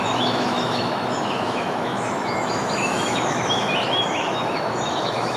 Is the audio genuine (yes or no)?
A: no